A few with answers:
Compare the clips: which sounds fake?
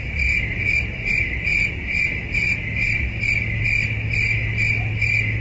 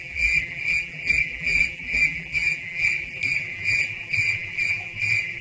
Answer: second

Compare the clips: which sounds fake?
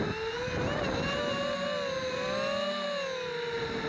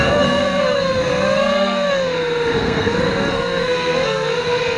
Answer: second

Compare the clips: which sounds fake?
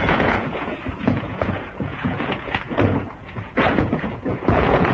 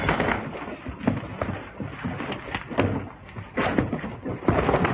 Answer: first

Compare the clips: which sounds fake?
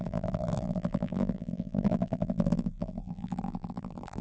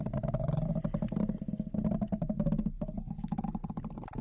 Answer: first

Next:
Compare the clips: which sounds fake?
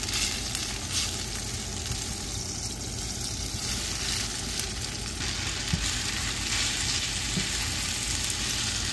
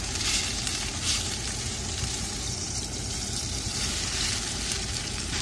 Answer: second